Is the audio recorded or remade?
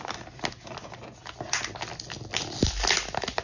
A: recorded